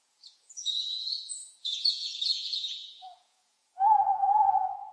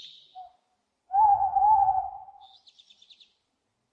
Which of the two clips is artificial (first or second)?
first